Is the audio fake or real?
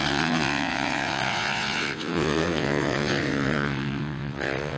fake